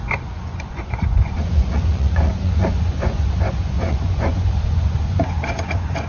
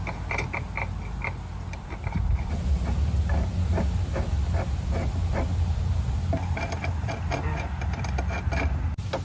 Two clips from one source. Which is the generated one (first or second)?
first